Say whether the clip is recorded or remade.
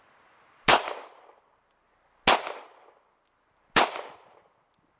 recorded